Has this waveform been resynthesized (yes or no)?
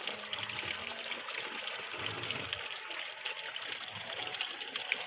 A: no